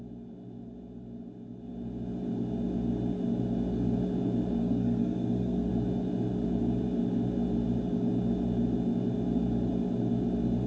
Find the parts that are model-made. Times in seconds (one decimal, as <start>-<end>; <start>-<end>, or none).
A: 4.6-5.7